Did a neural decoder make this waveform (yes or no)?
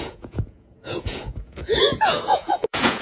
yes